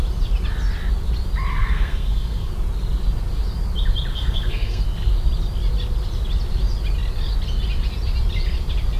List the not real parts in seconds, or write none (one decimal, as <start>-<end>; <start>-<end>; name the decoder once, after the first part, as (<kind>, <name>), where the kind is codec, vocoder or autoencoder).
1.5-2.5 (codec, SNAC); 4.1-4.8